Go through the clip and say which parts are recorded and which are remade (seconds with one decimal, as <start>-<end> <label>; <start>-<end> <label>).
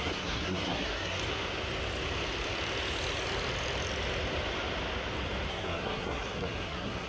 0.0-1.2 remade; 1.2-5.5 recorded; 5.5-7.1 remade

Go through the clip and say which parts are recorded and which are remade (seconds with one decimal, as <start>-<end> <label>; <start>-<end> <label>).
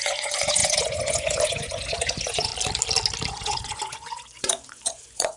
0.0-2.5 remade; 2.5-3.3 recorded; 3.3-5.4 remade